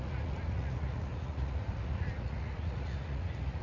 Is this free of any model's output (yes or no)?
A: no